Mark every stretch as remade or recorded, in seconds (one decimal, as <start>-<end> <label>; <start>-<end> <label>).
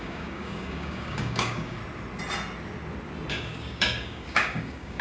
0.0-1.8 remade; 1.8-3.3 recorded; 3.3-5.0 remade